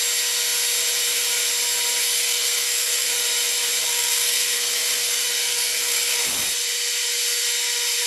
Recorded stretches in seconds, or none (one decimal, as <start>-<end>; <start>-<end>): 0.0-2.2; 3.2-3.8; 6.3-8.1